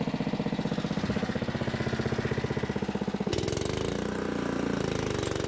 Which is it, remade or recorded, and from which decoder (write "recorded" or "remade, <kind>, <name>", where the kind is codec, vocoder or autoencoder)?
recorded